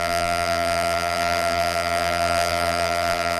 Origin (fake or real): fake